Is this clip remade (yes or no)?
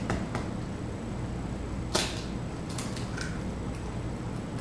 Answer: no